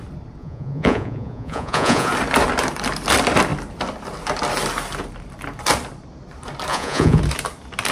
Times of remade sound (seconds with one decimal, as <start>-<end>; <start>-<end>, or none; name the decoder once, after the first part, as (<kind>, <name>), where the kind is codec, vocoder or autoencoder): 0.4-2.1 (vocoder, Vocos); 6.7-7.2